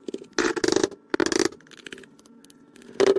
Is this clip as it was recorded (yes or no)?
yes